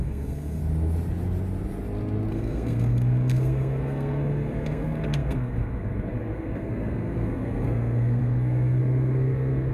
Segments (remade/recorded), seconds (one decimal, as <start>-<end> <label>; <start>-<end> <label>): 0.0-0.6 remade; 0.6-2.3 recorded; 2.3-9.7 remade